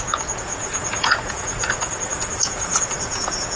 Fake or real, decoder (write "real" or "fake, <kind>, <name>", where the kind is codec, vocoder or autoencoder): fake, vocoder, Vocos